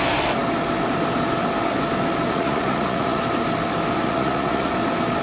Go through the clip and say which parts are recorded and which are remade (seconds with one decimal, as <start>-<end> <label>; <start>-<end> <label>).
0.0-2.3 recorded; 2.3-3.2 remade; 3.2-4.0 recorded; 4.0-4.7 remade; 4.7-5.2 recorded